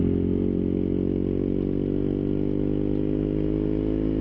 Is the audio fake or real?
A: real